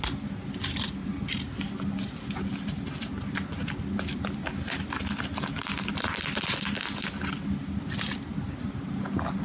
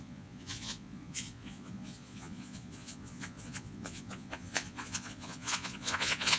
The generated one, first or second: second